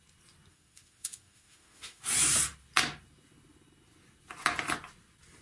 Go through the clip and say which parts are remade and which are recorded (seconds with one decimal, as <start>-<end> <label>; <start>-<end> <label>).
0.0-0.5 recorded; 0.5-2.0 remade; 2.0-5.4 recorded